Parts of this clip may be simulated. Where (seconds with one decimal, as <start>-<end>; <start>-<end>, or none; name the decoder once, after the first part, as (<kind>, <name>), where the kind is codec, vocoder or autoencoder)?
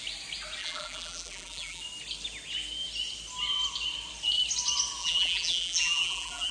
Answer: 0.6-1.8 (vocoder, BigVGAN v2); 5.0-6.5